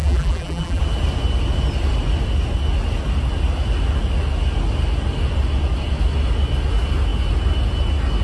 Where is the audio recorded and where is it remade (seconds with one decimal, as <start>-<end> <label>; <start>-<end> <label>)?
0.0-0.8 remade; 0.8-8.2 recorded